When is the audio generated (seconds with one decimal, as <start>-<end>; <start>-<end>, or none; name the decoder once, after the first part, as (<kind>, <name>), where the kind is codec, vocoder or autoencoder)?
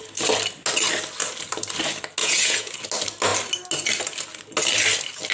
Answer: 2.2-2.7 (vocoder, Vocos)